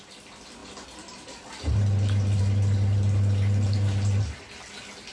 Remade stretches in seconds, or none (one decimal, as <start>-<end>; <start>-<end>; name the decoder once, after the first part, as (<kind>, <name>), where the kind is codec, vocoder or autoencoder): none